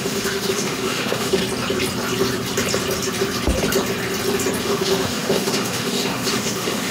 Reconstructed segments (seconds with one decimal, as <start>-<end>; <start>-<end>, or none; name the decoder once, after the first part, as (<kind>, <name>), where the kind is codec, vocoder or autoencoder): 0.0-1.4 (autoencoder, DAC-VAE); 4.6-6.9